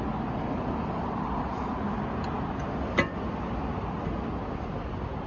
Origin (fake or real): real